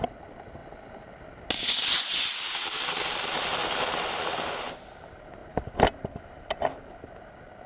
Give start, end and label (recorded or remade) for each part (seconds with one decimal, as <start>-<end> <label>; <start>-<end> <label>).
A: 0.0-5.4 recorded; 5.4-6.9 remade; 6.9-7.7 recorded